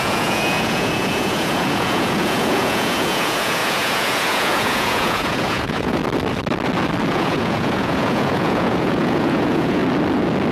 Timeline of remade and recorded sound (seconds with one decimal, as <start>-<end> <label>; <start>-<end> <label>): 0.0-6.0 remade; 6.0-7.1 recorded; 7.1-9.8 remade; 9.8-10.5 recorded